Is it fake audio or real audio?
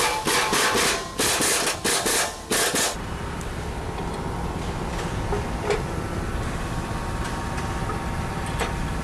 real